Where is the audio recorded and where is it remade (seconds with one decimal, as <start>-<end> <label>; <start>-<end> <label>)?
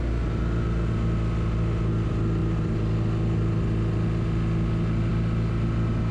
0.0-6.1 recorded